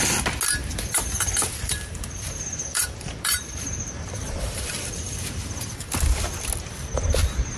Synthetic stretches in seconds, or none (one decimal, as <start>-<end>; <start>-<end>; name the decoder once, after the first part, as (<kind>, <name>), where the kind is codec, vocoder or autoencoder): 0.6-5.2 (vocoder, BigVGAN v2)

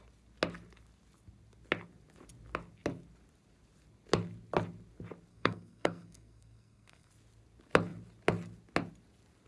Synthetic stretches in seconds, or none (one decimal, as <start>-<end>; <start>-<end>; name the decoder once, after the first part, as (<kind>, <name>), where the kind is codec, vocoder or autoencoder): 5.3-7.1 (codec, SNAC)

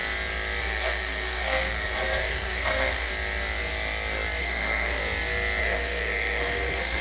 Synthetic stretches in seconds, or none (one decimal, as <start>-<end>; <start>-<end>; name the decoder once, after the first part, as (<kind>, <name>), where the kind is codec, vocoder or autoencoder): 0.6-3.1 (codec, SNAC); 4.4-5.0; 5.6-7.0

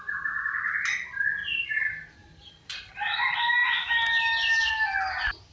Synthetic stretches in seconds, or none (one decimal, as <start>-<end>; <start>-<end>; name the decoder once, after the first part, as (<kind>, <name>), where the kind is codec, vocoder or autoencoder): 1.4-2.9 (vocoder, BigVGAN v2)

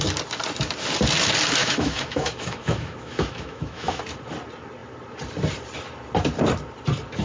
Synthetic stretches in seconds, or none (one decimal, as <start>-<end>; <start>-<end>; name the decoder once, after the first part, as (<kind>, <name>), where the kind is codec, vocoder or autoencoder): 1.6-4.0 (autoencoder, DAC-VAE)